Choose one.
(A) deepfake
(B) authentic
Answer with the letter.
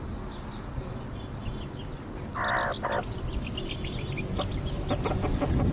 B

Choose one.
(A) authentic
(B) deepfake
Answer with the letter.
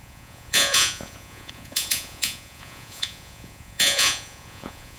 B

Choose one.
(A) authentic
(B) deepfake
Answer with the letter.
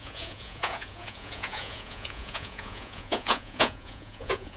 B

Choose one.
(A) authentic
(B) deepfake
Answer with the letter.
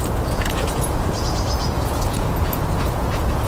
B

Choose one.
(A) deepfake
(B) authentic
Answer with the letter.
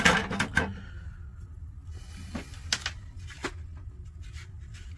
B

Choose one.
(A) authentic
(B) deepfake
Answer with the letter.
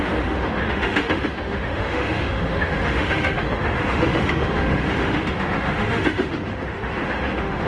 B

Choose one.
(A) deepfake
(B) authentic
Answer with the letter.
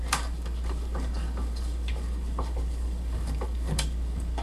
A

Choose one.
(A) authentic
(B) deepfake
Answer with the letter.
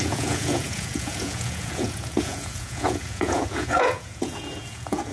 B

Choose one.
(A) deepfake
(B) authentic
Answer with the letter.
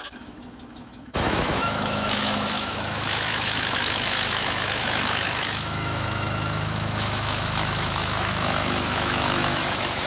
A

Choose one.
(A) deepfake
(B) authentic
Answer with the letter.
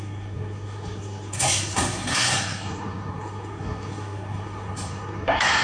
A